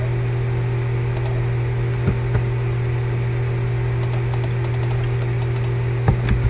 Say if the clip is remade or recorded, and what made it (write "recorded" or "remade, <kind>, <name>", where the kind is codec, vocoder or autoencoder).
recorded